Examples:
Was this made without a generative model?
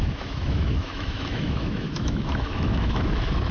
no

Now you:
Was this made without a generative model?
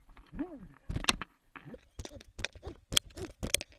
yes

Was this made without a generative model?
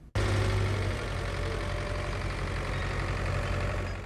yes